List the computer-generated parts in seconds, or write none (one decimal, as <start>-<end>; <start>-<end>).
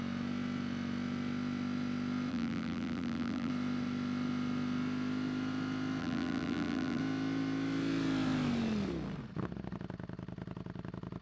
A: 2.3-3.5; 6.0-7.0